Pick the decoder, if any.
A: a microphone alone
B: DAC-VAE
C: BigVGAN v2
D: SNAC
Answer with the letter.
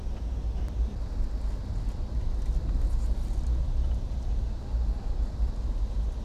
A